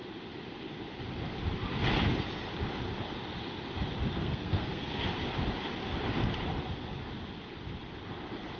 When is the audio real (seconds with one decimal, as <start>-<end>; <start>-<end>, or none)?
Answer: 0.0-4.2; 5.0-8.6